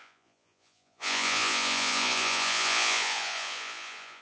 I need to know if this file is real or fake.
fake